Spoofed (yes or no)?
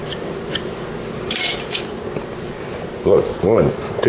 no